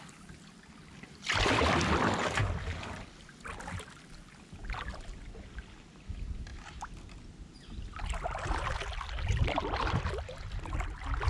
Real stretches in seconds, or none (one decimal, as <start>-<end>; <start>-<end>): 0.0-11.3